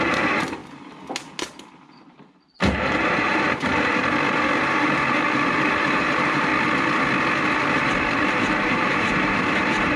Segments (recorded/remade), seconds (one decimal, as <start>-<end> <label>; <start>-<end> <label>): 0.0-0.6 remade; 0.6-1.9 recorded; 1.9-3.9 remade; 3.9-4.6 recorded; 4.6-6.5 remade; 6.5-8.0 recorded; 8.0-10.0 remade

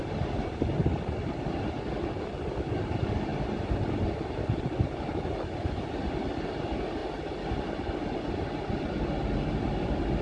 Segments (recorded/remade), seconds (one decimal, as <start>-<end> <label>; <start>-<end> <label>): 0.0-10.2 recorded

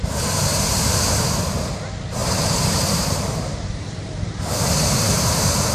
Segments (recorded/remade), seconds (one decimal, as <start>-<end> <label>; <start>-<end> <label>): 0.0-0.5 recorded; 0.5-1.3 remade; 1.3-2.2 recorded; 2.2-5.7 remade